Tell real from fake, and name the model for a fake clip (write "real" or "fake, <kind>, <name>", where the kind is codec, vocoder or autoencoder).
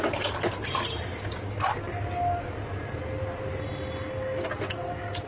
real